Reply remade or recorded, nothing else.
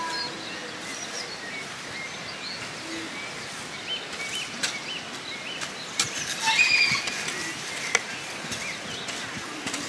recorded